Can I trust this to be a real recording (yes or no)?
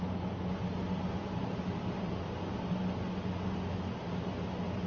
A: yes